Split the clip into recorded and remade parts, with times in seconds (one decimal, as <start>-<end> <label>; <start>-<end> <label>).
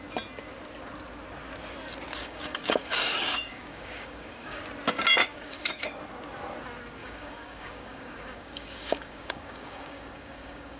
0.0-2.2 recorded; 2.2-4.6 remade; 4.6-5.2 recorded; 5.2-6.0 remade; 6.0-7.0 recorded; 7.0-10.8 remade